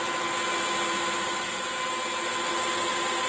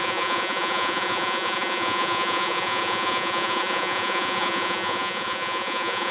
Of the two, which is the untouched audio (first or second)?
first